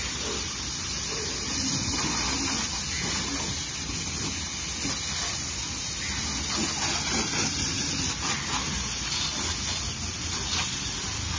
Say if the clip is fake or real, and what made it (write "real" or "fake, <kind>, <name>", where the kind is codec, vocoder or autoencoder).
real